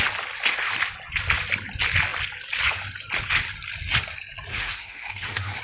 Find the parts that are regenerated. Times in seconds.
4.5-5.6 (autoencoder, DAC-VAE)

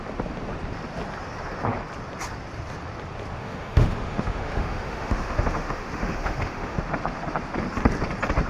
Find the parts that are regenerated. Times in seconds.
3.4-6.8 (autoencoder, DAC-VAE)

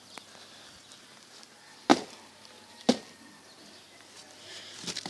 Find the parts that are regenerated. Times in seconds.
none

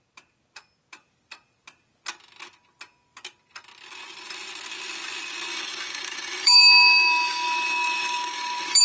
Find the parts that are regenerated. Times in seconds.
5.5-8.8 (autoencoder, DAC-VAE)

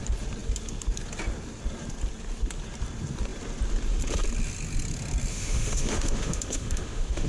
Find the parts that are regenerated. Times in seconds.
5.3-7.3 (autoencoder, DAC-VAE)